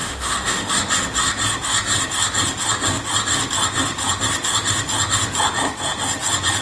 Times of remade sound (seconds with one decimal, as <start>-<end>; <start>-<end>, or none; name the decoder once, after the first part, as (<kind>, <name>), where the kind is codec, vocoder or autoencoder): 0.0-0.7 (autoencoder, DAC-VAE)